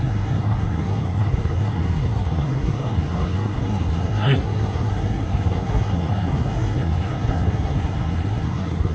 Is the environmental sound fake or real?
fake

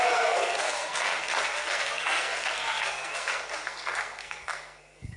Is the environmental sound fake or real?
fake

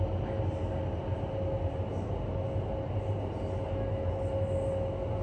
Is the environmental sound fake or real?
real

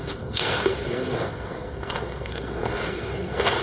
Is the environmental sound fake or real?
fake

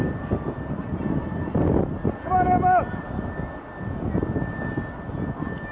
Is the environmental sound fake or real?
real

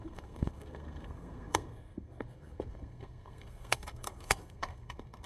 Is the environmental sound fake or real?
fake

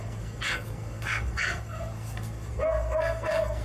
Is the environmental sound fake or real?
fake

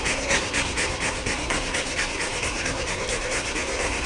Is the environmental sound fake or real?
fake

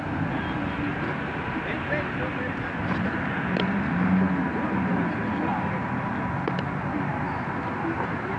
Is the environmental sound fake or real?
real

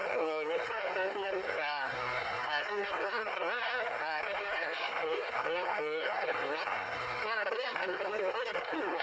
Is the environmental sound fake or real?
fake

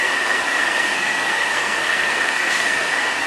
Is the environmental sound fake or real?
fake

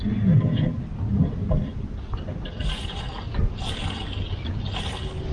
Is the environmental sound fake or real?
real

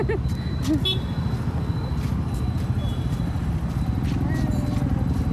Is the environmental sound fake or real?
real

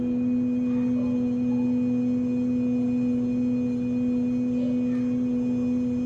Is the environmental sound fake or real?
real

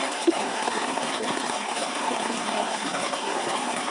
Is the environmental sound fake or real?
fake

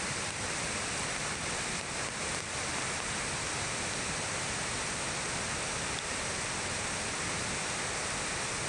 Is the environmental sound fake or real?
real